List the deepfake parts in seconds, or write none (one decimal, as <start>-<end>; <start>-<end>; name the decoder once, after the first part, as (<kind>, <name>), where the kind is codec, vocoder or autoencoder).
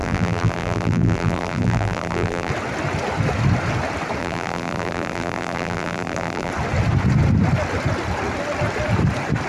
0.0-2.5 (vocoder, BigVGAN v2); 4.2-6.5